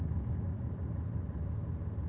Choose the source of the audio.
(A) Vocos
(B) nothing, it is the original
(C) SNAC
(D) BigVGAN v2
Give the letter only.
B